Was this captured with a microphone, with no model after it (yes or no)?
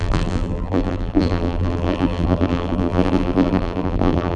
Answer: no